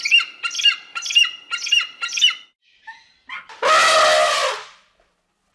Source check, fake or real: real